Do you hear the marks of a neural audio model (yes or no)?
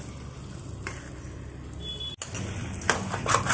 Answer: no